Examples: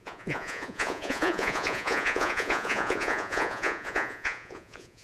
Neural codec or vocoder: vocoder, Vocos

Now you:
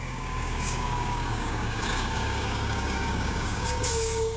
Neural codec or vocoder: codec, DAC